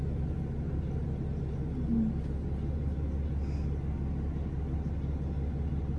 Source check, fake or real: real